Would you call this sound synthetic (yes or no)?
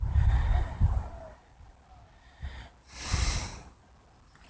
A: no